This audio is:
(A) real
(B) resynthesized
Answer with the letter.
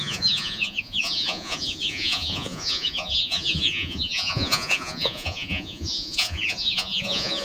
B